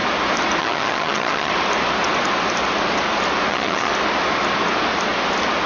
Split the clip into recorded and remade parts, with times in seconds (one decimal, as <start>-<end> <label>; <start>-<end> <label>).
0.0-0.6 recorded; 0.6-1.5 remade; 1.5-3.5 recorded; 3.5-3.9 remade; 3.9-5.7 recorded